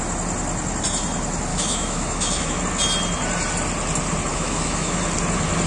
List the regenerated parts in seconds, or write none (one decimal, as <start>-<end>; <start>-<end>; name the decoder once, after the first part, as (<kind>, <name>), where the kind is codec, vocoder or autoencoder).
1.5-2.6 (autoencoder, DAC-VAE); 4.3-5.0